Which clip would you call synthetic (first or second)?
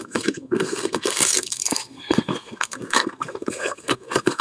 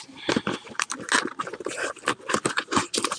first